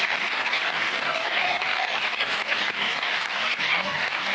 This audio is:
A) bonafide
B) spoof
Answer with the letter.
B